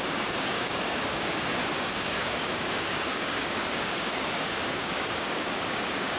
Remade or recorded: remade